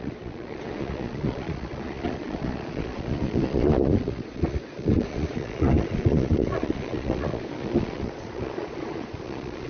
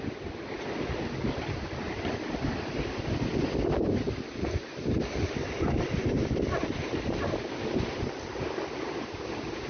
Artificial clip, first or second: first